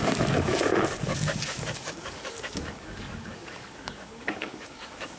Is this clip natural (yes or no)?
no